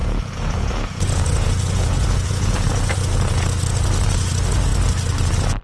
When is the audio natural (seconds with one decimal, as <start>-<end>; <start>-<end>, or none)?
3.4-5.6